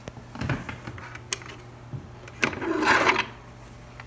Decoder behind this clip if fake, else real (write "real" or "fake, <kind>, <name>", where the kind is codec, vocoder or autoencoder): real